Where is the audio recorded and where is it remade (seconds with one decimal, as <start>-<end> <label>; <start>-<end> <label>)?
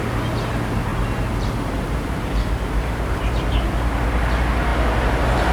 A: 0.0-0.9 recorded; 0.9-3.6 remade; 3.6-5.5 recorded